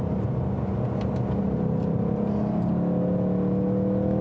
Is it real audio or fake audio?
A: real